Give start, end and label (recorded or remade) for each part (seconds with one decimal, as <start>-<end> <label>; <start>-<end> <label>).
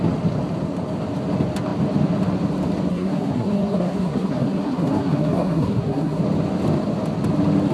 0.0-2.9 recorded; 2.9-6.2 remade; 6.2-7.7 recorded